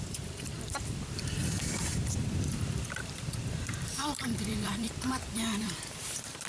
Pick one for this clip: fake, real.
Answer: fake